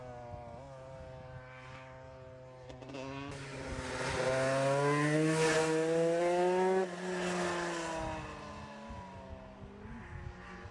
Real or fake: real